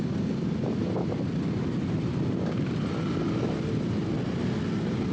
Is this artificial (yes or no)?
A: no